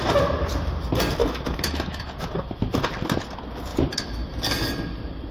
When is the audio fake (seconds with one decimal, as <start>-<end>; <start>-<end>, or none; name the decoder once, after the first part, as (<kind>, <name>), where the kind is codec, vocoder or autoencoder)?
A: 1.2-2.1 (autoencoder, DAC-VAE)